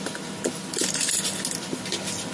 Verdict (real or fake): real